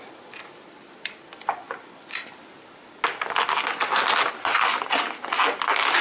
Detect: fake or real real